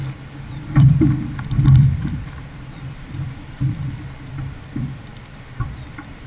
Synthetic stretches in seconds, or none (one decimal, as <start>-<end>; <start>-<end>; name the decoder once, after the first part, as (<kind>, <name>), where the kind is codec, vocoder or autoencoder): 0.0-6.3 (vocoder, BigVGAN v2)